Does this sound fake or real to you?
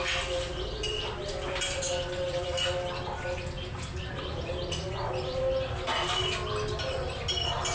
real